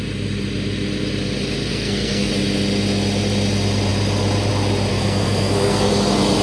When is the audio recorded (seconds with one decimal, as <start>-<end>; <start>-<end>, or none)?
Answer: 0.0-1.7; 2.3-4.9; 5.9-6.4